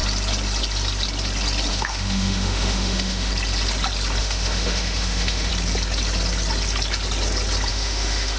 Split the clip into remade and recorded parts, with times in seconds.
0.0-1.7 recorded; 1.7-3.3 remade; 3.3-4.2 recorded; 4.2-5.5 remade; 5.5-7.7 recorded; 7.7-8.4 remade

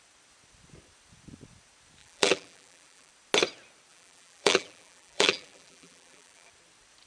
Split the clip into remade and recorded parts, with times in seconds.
0.0-2.0 recorded; 2.0-3.1 remade; 3.1-3.9 recorded; 3.9-6.5 remade; 6.5-7.1 recorded

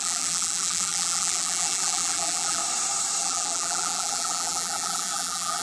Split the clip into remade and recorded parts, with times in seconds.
0.0-2.6 remade; 2.6-3.2 recorded; 3.2-5.6 remade